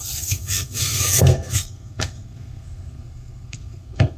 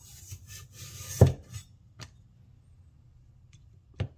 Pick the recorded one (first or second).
second